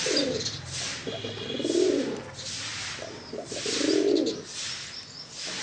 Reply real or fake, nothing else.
real